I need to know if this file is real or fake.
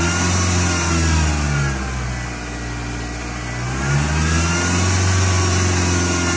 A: real